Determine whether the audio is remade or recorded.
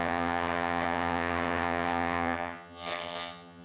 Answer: remade